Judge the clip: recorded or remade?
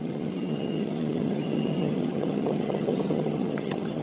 remade